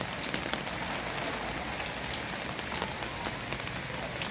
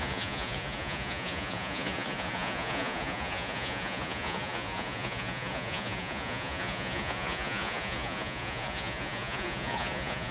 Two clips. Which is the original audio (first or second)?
first